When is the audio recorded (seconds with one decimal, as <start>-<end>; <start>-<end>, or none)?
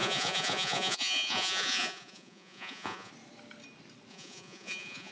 3.1-4.1